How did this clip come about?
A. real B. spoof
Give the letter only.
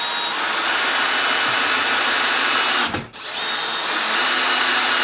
A